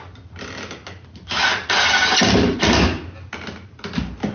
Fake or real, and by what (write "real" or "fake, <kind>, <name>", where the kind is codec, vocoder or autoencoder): real